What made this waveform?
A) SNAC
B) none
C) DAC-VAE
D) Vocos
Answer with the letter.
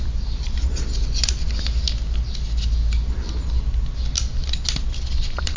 B